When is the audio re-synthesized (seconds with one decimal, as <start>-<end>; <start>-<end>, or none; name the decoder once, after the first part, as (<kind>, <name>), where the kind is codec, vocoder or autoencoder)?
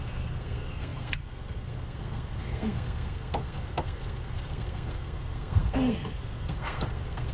0.0-7.3 (codec, SNAC)